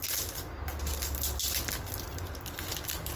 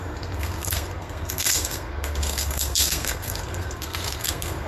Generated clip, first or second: second